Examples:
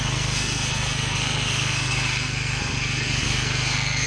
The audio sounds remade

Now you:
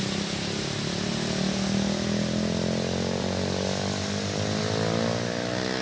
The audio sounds recorded